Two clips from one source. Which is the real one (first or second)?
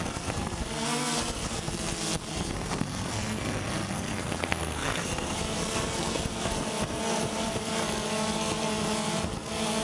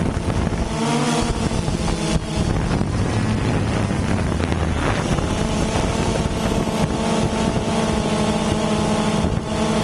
second